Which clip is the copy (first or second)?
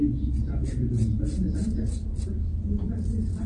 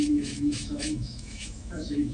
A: second